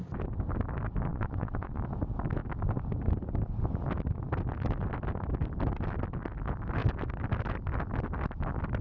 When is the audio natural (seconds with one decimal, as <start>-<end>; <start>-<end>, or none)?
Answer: 0.0-1.1; 1.8-8.8